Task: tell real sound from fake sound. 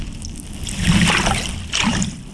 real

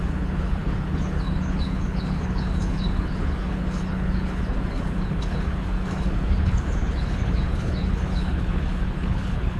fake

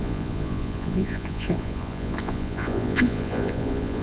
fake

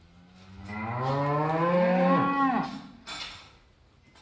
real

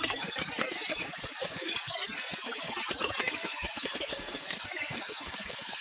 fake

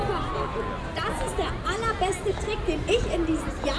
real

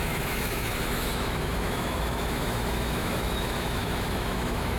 fake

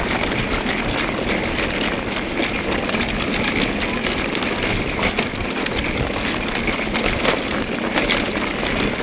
real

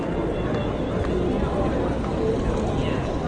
real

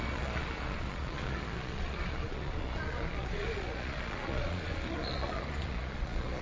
fake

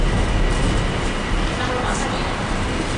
real